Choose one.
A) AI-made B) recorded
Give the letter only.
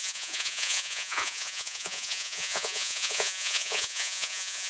A